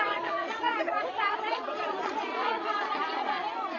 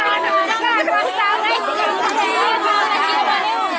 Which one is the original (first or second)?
second